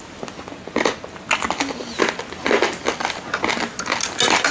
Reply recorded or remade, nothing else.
recorded